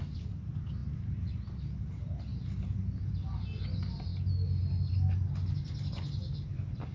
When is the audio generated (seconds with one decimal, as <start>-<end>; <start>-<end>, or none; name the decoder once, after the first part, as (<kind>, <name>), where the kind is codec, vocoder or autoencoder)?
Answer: none